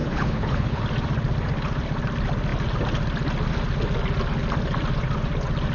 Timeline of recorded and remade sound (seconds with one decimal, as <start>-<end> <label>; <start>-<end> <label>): 0.0-0.8 remade; 0.8-5.7 recorded